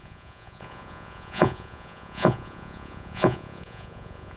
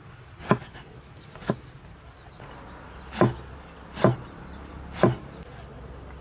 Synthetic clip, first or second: first